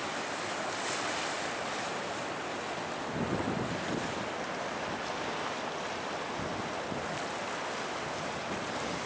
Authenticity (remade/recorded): recorded